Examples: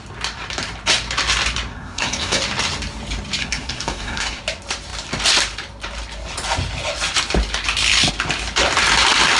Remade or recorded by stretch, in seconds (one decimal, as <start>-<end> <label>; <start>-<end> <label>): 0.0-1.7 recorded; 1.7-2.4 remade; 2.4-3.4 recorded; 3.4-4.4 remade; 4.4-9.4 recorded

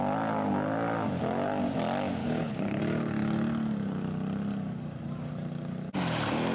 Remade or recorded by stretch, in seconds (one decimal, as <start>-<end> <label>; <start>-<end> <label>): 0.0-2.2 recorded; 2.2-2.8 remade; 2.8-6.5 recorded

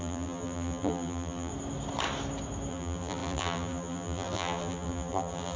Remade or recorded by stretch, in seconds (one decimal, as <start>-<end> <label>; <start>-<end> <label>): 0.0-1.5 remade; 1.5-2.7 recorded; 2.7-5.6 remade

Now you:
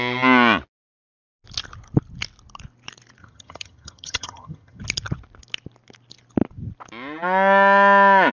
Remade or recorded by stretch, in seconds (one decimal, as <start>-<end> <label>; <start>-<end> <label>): 0.0-3.2 recorded; 3.2-4.8 remade; 4.8-8.3 recorded